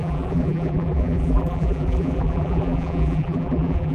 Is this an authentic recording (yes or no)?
no